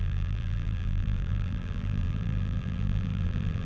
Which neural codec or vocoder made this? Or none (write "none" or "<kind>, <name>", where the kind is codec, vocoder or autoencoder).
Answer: vocoder, BigVGAN v2